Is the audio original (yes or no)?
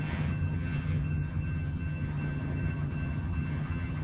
no